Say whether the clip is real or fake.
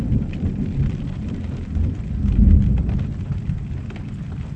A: real